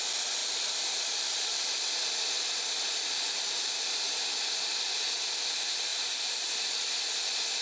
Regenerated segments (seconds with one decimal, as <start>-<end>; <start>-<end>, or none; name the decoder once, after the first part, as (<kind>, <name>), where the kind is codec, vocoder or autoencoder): 0.4-1.6 (vocoder, BigVGAN v2); 5.9-6.9